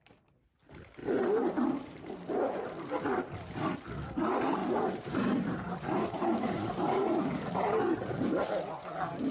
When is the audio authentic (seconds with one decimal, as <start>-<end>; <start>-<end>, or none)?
0.0-1.0; 2.6-4.6; 7.8-9.3